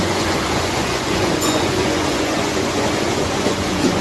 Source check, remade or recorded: remade